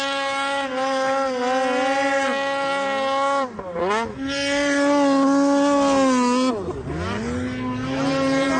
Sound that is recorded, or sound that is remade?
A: recorded